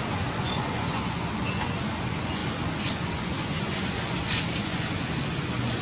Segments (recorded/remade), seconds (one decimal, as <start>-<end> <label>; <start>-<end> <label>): 0.0-5.8 remade